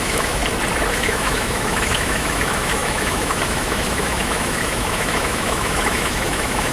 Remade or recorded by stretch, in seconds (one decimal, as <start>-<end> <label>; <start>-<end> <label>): 0.0-0.4 remade; 0.4-0.9 recorded; 0.9-6.7 remade